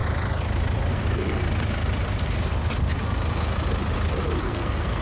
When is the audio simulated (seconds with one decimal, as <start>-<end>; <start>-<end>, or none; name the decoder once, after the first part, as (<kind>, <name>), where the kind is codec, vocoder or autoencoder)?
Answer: 0.9-1.4 (codec, SNAC); 4.4-5.0